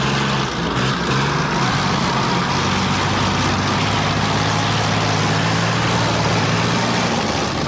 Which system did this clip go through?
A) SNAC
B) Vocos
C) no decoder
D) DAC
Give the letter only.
C